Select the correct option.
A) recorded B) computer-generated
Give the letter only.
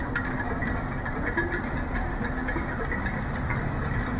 A